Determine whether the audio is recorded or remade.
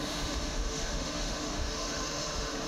remade